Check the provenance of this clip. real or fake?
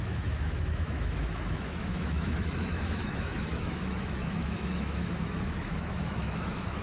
fake